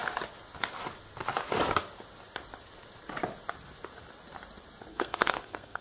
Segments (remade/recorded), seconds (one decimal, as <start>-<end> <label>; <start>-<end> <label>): 0.0-4.9 recorded; 4.9-5.8 remade